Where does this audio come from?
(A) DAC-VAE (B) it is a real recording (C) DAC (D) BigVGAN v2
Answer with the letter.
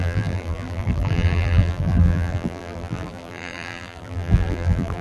D